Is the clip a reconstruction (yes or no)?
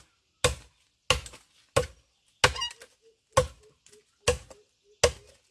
no